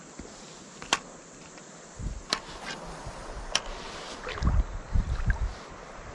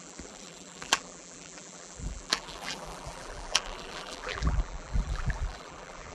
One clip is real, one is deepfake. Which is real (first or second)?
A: first